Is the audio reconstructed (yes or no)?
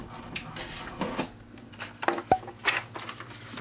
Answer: no